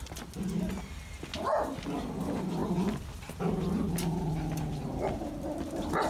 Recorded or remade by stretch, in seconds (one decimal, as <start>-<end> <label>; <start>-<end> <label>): 0.0-6.1 recorded